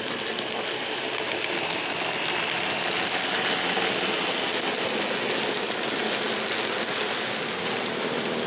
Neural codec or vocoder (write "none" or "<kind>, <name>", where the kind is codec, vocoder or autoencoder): none